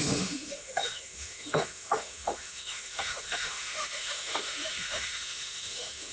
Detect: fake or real fake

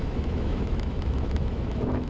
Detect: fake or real fake